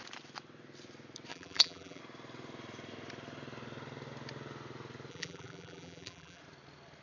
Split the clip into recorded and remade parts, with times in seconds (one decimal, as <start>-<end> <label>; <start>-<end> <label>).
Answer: 0.0-1.3 recorded; 1.3-2.0 remade; 2.0-5.1 recorded; 5.1-6.4 remade; 6.4-7.0 recorded